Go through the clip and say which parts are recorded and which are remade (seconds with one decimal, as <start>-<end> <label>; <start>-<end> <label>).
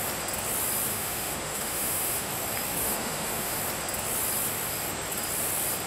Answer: 0.0-0.9 recorded; 0.9-2.3 remade; 2.3-2.8 recorded; 2.8-3.6 remade; 3.6-5.9 recorded